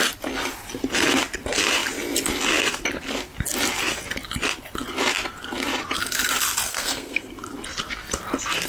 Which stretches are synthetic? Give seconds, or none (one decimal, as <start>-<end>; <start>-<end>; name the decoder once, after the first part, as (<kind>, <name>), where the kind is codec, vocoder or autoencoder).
6.7-7.3 (codec, SNAC)